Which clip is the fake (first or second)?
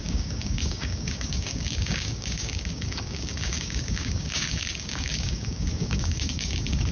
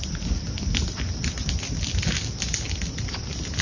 first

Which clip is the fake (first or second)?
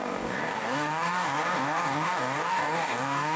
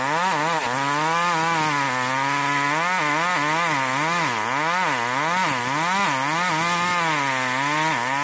first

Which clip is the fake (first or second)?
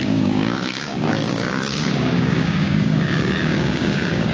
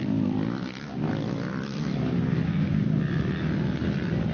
first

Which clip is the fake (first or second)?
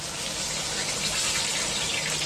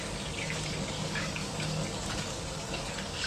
second